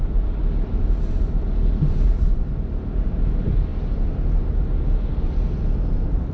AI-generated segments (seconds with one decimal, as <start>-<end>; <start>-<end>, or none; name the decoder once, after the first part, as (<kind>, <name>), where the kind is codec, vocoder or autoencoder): 0.0-0.4 (vocoder, BigVGAN v2); 1.7-3.7; 5.7-6.3